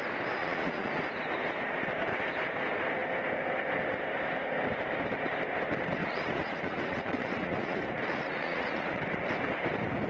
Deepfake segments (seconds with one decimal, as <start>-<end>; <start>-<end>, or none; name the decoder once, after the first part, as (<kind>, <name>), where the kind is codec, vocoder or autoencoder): 0.4-0.9 (vocoder, Vocos); 6.0-9.0

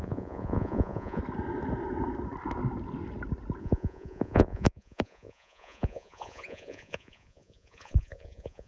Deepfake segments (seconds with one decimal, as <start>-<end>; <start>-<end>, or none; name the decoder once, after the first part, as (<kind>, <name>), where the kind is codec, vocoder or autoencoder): 0.0-1.2 (vocoder, Vocos); 3.6-8.7